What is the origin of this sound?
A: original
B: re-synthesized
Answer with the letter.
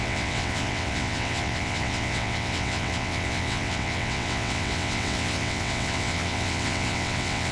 B